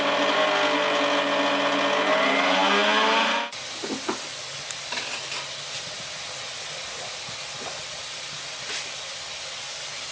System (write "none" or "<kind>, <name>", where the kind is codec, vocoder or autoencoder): none